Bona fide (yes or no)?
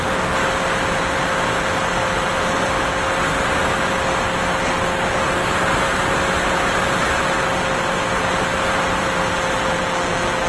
yes